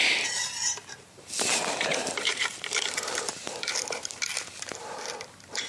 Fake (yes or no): yes